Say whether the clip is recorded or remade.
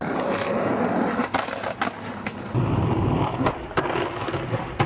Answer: recorded